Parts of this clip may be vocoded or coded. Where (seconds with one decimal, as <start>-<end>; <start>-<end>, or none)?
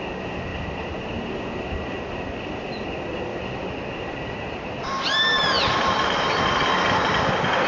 3.3-6.3